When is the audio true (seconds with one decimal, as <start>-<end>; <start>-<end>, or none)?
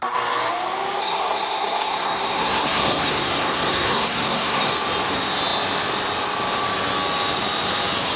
0.0-1.0; 4.7-8.2